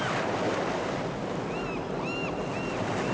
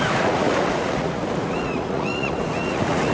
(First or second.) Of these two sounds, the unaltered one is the first